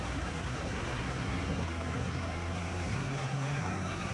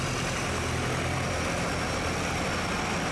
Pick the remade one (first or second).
first